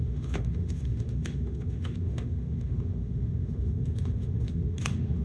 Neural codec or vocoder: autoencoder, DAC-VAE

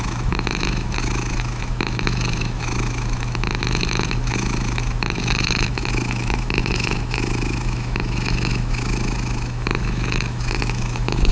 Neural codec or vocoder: autoencoder, DAC-VAE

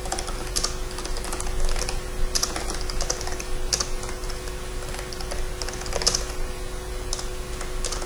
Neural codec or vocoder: none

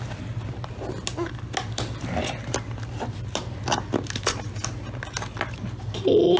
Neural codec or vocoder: none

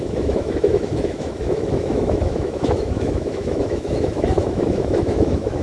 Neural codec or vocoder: autoencoder, DAC-VAE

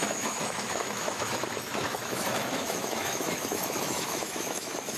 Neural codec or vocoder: autoencoder, DAC-VAE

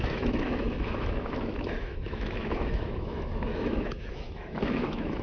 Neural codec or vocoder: autoencoder, DAC-VAE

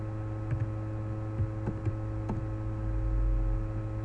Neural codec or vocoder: none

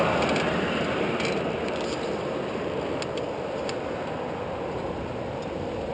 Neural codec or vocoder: none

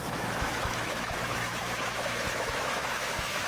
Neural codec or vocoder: autoencoder, DAC-VAE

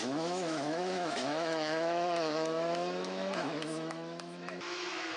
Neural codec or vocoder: autoencoder, DAC-VAE